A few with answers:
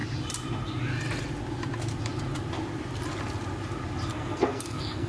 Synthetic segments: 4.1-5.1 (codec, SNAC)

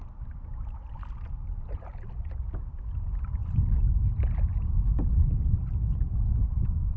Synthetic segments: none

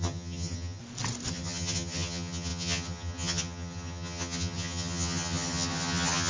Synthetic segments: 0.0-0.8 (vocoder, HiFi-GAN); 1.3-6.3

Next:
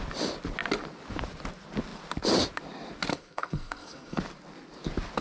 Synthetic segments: 3.1-4.2 (codec, SNAC)

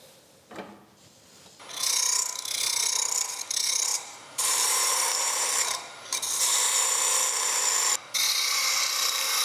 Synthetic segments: 3.9-6.2 (vocoder, BigVGAN v2)

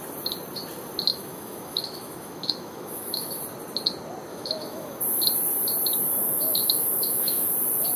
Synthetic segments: 1.1-3.4 (autoencoder, DAC-VAE); 4.3-5.0; 6.2-7.5

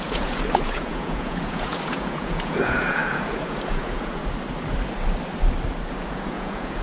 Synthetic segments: 0.0-4.2 (vocoder, Vocos); 5.9-6.8